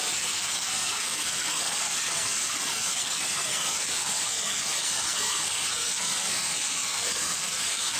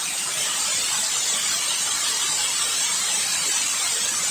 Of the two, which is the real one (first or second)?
second